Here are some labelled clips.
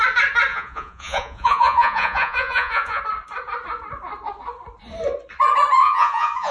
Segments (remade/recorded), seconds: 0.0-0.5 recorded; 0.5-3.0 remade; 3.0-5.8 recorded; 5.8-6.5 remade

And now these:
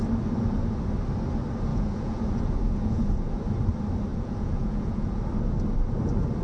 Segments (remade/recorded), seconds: 0.0-1.7 recorded; 1.7-3.3 remade; 3.3-4.1 recorded; 4.1-5.2 remade; 5.2-6.4 recorded

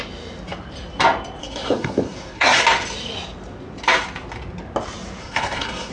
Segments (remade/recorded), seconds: 0.0-1.4 recorded; 1.4-2.6 remade; 2.6-5.2 recorded; 5.2-5.9 remade

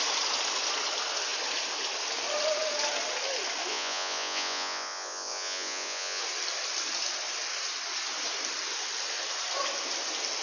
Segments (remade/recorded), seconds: 0.0-3.7 recorded; 3.7-6.2 remade; 6.2-10.4 recorded

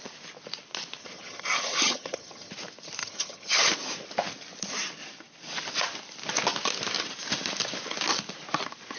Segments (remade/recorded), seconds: 0.0-1.0 recorded; 1.0-2.5 remade; 2.5-3.0 recorded; 3.0-3.5 remade; 3.5-9.0 recorded

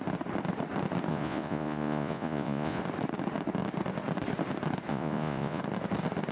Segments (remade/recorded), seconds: 0.0-1.1 recorded; 1.1-2.8 remade; 2.8-4.9 recorded; 4.9-5.6 remade; 5.6-6.3 recorded

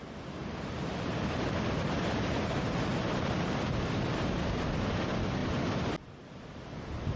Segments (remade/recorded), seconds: 0.0-0.4 recorded; 0.4-3.6 remade; 3.6-7.2 recorded